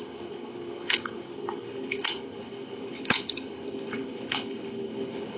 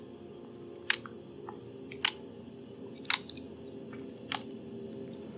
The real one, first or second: second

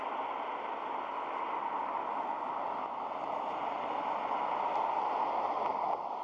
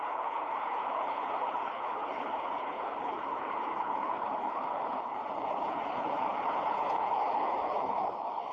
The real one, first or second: first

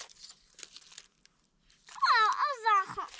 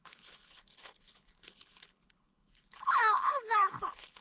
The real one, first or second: first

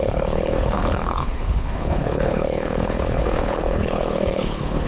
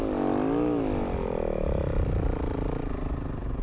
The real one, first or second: second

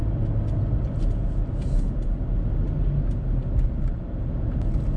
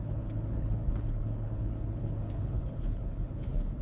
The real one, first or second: first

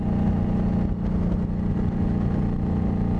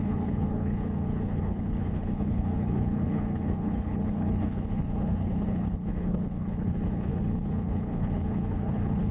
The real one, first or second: first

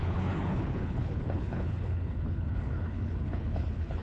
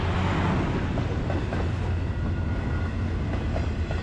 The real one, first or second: second